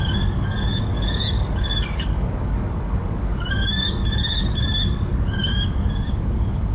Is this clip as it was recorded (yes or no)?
no